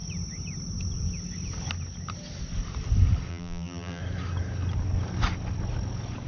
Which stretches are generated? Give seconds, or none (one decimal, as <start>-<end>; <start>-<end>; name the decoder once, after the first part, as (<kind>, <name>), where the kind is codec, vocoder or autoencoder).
3.3-4.0 (vocoder, BigVGAN v2)